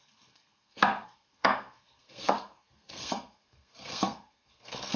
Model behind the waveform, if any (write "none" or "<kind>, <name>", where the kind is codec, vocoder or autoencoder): codec, SNAC